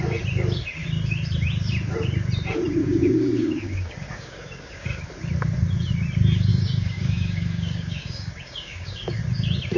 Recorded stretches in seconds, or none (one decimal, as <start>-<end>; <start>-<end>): 0.0-2.8; 5.0-6.5; 9.2-9.8